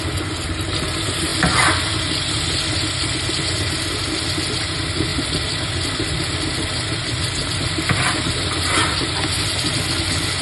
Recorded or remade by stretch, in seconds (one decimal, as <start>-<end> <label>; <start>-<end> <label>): 0.0-10.4 recorded